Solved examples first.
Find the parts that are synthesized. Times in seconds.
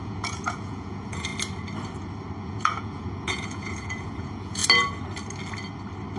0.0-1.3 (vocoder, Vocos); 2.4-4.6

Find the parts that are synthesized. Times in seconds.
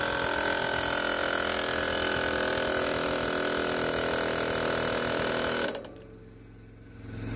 none